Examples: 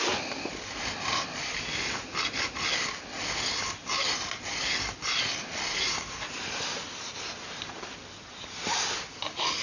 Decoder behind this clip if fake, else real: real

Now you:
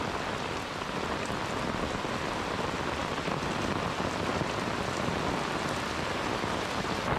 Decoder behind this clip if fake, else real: real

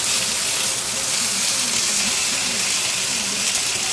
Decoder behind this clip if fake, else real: real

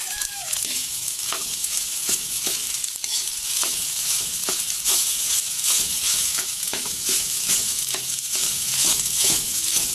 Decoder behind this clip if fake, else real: fake, autoencoder, DAC-VAE